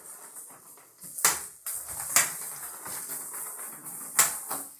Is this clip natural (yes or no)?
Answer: yes